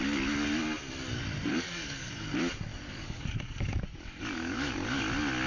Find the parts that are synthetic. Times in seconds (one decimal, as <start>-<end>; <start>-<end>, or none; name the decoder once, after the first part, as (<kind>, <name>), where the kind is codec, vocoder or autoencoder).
1.5-2.1 (codec, DAC); 2.7-5.0